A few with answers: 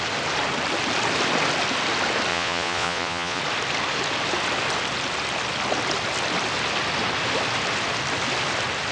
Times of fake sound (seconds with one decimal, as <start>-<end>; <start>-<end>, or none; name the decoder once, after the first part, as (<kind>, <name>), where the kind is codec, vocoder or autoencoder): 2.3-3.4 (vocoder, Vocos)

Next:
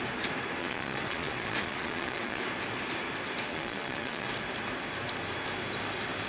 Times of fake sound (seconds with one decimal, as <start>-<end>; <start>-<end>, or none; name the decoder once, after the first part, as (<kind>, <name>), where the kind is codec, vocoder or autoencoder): 0.6-2.4 (vocoder, Vocos); 3.5-4.3

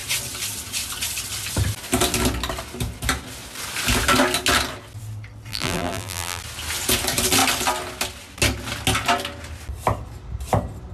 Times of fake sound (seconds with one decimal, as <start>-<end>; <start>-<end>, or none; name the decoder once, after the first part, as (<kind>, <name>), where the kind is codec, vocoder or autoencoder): 5.5-6.4 (vocoder, BigVGAN v2)

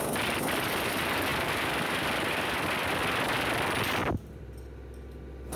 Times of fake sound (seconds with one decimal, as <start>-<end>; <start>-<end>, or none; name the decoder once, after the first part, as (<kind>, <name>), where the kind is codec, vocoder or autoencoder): 1.3-2.9 (vocoder, BigVGAN v2); 4.0-4.6